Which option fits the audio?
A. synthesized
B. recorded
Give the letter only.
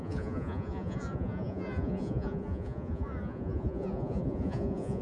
A